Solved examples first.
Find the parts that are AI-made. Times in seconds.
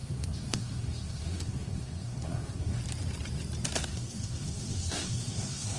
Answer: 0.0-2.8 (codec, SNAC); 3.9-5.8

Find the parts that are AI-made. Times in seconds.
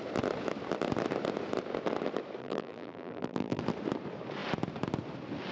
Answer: 2.4-3.6 (vocoder, BigVGAN v2)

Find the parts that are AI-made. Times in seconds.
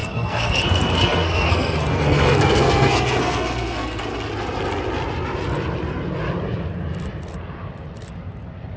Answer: 0.0-4.0 (codec, SNAC)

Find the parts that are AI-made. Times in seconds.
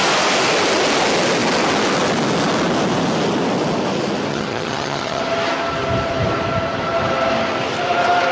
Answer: 4.3-5.2 (vocoder, HiFi-GAN)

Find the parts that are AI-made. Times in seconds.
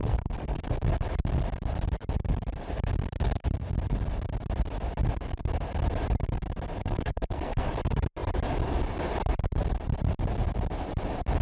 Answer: 0.0-0.9 (codec, SNAC); 6.8-7.7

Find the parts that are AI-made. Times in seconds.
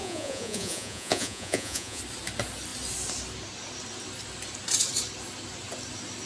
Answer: 0.0-2.0 (vocoder, Vocos)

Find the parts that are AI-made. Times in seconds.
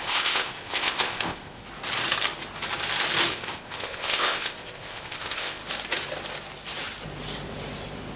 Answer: 0.0-1.6 (codec, ZipCodec); 3.3-5.6